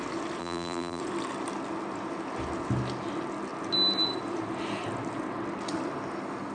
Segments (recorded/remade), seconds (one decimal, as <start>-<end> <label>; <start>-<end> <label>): 0.0-0.4 recorded; 0.4-1.0 remade; 1.0-6.5 recorded